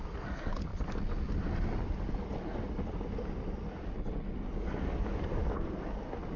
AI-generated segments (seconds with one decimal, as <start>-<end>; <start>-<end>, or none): 0.0-0.7; 4.5-5.4